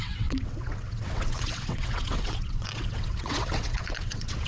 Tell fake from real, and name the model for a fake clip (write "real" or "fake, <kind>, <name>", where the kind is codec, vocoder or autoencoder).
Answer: fake, vocoder, WaveNeXt